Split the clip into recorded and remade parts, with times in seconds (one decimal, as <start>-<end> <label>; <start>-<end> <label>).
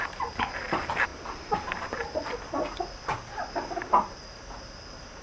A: 0.0-5.2 recorded